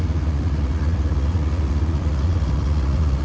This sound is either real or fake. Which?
fake